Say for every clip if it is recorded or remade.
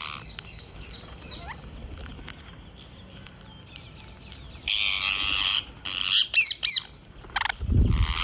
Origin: recorded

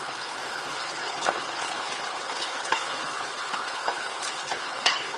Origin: remade